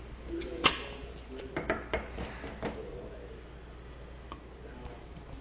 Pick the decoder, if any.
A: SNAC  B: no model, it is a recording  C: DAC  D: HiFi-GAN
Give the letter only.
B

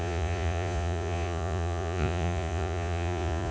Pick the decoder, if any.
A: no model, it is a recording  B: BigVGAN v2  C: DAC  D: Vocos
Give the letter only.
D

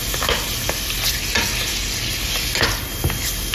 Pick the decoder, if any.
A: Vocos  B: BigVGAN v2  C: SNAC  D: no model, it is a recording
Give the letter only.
D